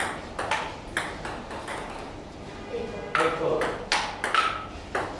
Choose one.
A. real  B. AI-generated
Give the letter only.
A